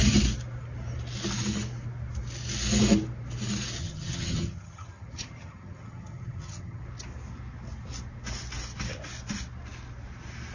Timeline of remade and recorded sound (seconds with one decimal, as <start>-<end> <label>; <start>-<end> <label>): 0.0-3.8 recorded; 3.8-6.8 remade; 6.8-10.5 recorded